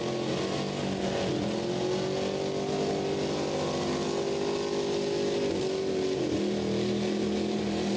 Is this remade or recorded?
recorded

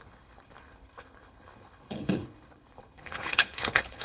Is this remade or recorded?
remade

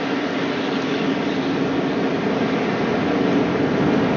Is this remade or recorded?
recorded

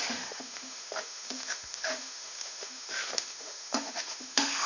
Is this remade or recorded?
remade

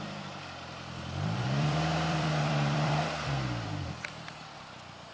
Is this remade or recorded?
remade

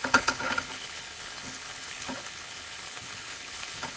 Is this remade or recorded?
remade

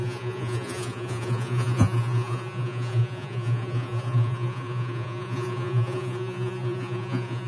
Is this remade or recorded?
remade